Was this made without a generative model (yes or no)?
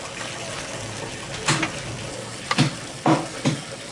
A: yes